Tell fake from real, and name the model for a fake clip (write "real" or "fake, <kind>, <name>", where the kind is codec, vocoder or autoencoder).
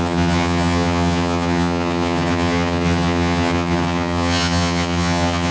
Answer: fake, vocoder, HiFi-GAN